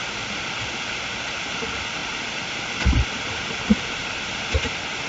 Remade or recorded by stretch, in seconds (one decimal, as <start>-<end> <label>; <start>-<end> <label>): 0.0-2.0 recorded; 2.0-5.1 remade